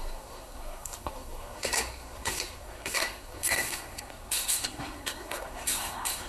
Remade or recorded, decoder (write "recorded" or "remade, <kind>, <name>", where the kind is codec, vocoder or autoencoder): remade, codec, SNAC